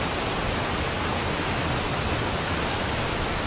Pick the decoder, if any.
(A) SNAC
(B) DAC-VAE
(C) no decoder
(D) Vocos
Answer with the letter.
C